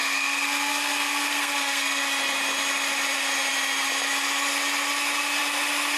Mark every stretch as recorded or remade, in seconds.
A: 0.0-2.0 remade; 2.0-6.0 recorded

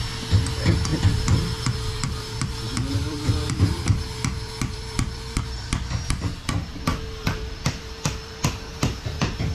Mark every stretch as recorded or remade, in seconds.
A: 0.0-0.9 recorded; 0.9-5.4 remade; 5.4-6.9 recorded; 6.9-8.3 remade; 8.3-9.5 recorded